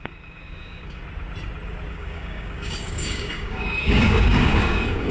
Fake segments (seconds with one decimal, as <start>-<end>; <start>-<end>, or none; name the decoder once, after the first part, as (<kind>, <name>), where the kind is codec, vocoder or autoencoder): 0.0-1.0 (codec, DAC); 1.9-5.1